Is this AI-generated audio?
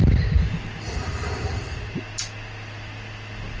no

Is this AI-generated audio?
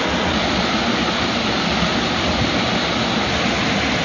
no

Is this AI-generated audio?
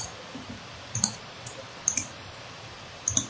yes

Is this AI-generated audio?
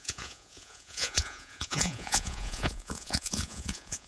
yes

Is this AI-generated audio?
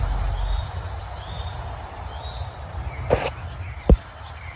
no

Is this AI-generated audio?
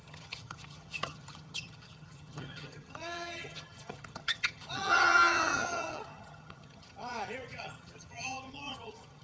yes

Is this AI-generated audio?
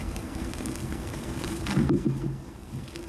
yes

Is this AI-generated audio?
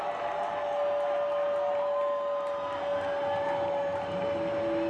no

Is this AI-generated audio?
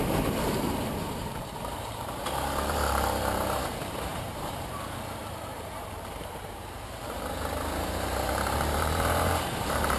yes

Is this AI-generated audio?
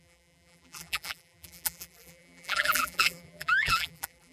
yes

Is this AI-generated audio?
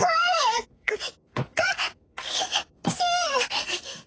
yes